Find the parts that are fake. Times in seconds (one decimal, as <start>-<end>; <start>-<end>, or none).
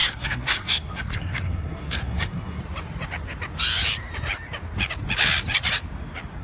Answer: 0.0-2.6